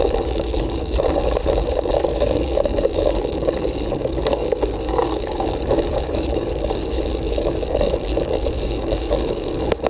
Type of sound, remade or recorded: remade